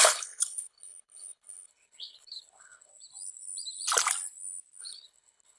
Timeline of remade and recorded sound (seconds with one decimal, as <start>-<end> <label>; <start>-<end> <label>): 0.0-2.9 remade; 2.9-4.8 recorded; 4.8-5.6 remade